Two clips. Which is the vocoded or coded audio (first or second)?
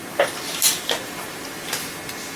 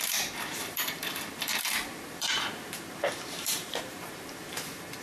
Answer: second